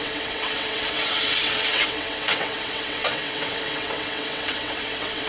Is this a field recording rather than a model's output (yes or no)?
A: no